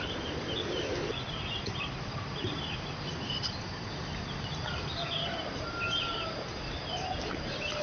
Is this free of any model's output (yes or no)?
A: yes